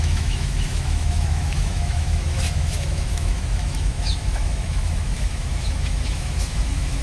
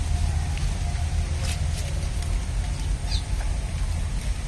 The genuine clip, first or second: second